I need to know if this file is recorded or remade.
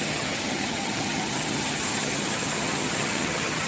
remade